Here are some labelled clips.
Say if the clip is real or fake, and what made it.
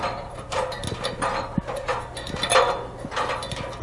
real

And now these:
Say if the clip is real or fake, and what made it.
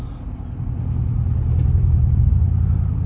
real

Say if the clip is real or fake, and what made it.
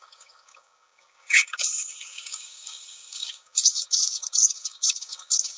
fake, codec, DAC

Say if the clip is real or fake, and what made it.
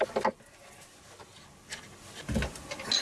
real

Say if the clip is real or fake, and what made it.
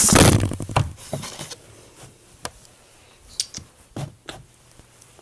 real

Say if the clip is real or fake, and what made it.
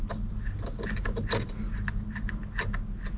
real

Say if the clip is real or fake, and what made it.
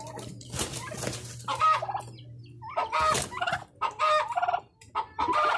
real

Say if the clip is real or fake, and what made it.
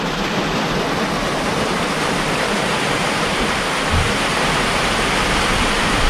fake, vocoder, BigVGAN v2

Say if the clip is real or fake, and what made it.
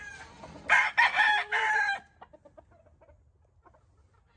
real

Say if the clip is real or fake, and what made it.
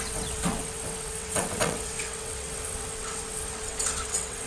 fake, vocoder, WaveNeXt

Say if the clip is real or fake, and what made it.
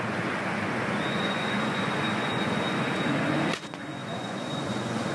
fake, vocoder, Vocos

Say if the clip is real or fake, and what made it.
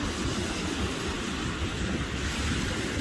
real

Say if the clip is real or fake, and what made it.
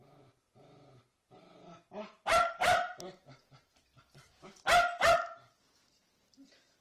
real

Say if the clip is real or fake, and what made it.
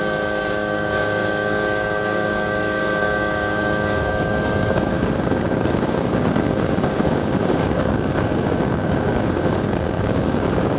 fake, codec, DAC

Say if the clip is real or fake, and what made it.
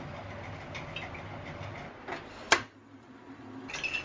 real